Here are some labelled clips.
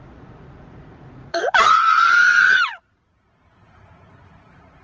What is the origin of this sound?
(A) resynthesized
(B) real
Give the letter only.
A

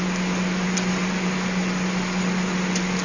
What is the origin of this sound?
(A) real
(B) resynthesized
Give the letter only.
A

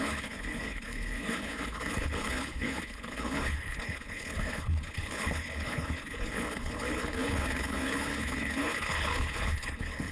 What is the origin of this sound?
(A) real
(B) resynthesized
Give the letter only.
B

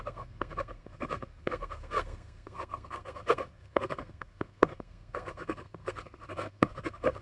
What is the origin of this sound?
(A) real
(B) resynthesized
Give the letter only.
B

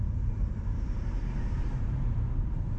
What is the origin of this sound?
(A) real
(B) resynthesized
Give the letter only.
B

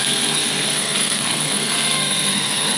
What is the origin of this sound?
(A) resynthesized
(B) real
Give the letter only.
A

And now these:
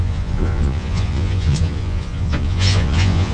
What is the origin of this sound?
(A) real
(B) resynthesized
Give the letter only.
B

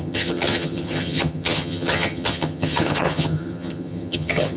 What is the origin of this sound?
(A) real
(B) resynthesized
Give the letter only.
B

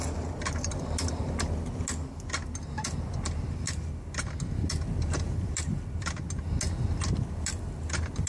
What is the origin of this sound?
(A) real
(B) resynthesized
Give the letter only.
A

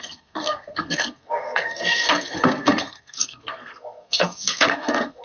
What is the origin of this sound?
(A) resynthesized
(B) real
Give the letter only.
A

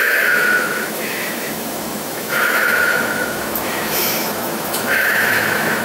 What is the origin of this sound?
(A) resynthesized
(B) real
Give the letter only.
A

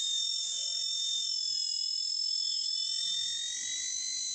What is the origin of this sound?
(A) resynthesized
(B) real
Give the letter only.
B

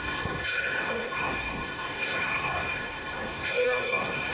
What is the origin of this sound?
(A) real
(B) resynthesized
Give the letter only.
B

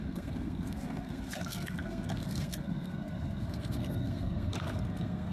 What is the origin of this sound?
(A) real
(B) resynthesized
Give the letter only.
B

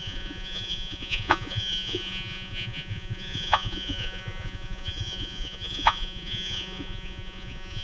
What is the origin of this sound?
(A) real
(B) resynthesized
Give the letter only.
B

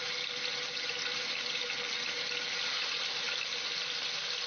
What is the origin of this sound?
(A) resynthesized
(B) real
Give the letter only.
B